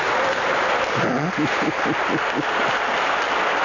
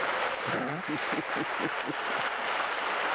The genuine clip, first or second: first